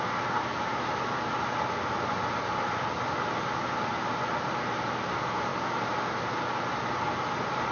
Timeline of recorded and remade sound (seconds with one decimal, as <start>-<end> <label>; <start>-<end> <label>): 0.0-7.7 recorded